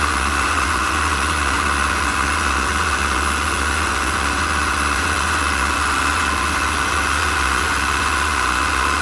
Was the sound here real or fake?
fake